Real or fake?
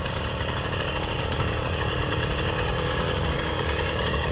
fake